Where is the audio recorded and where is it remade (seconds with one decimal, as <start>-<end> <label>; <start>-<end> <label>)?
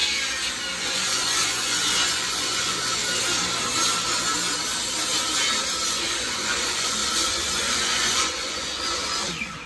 0.0-0.8 recorded; 0.8-3.0 remade; 3.0-5.9 recorded; 5.9-9.7 remade